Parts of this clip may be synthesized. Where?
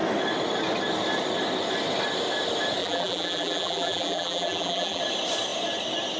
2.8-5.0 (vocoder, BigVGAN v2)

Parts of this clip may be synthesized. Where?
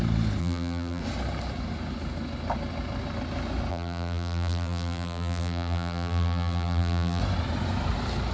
0.4-1.0 (vocoder, BigVGAN v2); 3.7-7.2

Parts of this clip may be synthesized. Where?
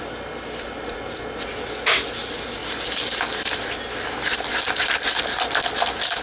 none